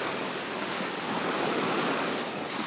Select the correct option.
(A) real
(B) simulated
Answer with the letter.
B